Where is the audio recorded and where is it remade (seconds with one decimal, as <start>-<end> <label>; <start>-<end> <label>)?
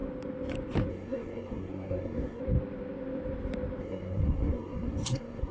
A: 0.0-0.9 recorded; 0.9-2.4 remade; 2.4-3.8 recorded; 3.8-5.5 remade